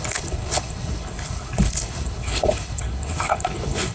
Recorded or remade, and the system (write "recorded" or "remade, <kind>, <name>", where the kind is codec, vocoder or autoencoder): remade, codec, HILCodec